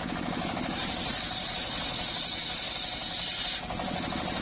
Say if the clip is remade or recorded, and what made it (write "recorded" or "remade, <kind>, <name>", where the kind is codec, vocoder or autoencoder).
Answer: recorded